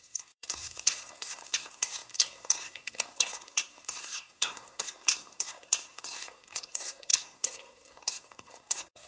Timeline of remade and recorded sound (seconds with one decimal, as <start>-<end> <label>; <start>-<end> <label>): 0.0-9.1 remade